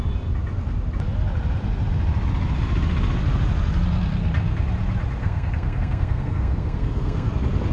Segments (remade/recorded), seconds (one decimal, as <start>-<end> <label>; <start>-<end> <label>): 0.0-5.2 recorded; 5.2-7.3 remade; 7.3-7.7 recorded